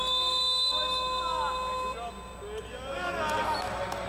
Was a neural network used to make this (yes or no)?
no